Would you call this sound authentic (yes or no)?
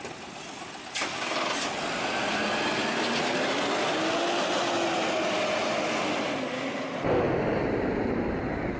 yes